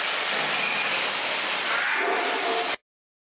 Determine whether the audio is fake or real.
real